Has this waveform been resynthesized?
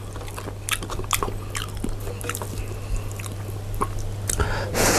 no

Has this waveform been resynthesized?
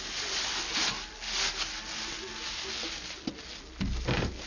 no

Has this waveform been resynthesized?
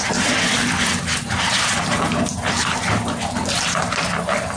no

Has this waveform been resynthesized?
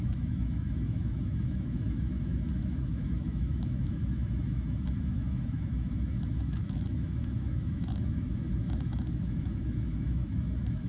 yes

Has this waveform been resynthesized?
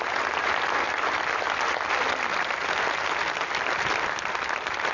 no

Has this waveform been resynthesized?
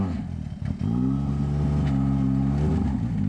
no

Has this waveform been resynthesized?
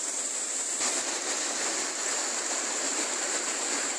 no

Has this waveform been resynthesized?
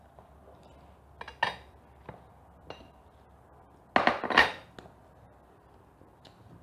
no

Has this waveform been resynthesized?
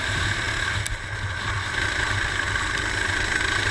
no